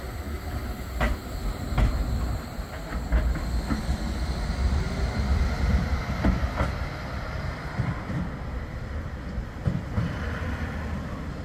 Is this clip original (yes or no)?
yes